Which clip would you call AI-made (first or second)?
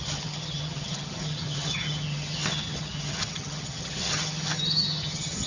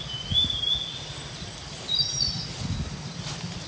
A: first